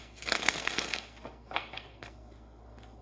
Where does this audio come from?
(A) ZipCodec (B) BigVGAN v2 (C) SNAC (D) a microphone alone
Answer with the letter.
C